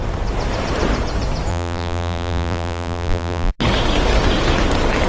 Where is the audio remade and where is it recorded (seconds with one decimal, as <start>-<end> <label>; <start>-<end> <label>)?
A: 0.0-1.5 recorded; 1.5-3.5 remade; 3.5-5.1 recorded